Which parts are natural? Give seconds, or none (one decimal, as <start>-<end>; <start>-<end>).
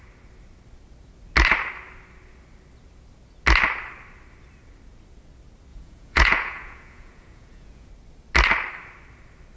0.0-5.7; 7.9-9.6